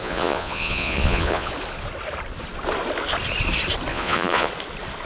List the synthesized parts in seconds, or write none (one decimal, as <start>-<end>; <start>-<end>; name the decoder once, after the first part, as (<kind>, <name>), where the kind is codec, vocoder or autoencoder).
0.0-1.5 (vocoder, Vocos); 3.9-4.5